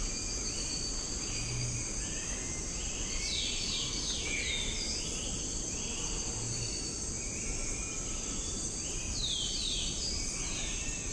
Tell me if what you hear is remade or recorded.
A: recorded